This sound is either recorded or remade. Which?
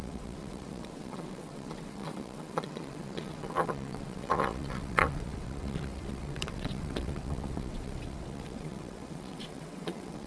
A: remade